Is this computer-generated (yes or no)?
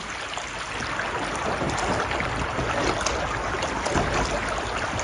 no